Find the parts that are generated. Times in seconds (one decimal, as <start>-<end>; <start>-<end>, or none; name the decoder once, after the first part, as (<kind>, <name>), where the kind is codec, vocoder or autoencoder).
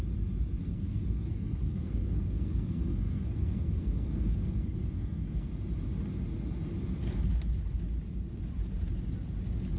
0.6-5.5 (codec, SNAC)